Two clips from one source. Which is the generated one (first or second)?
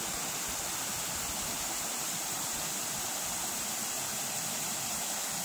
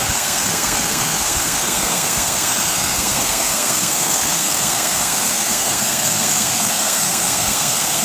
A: second